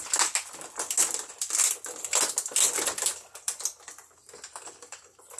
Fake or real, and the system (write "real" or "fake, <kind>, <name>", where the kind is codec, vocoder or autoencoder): real